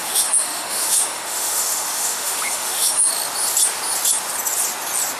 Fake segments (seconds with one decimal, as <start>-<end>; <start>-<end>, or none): 0.0-3.1